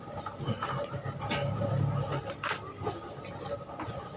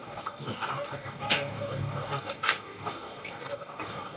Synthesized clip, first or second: second